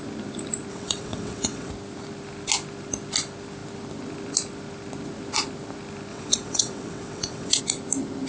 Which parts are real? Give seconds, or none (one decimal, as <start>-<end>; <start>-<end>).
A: 0.0-0.7; 1.7-6.1; 7.6-8.3